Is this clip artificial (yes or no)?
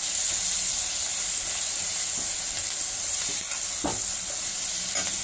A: no